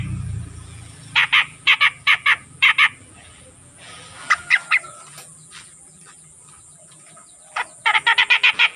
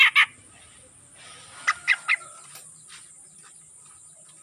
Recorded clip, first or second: second